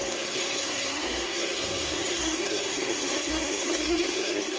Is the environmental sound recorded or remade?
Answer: remade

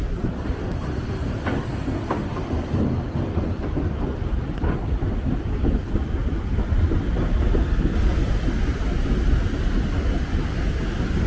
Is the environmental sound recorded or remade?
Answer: recorded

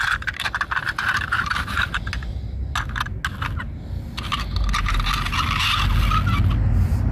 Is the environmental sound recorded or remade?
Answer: recorded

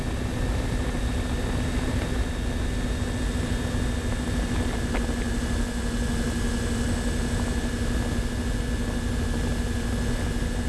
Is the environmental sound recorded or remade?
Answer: recorded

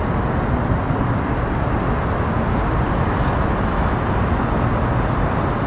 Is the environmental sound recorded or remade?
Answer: recorded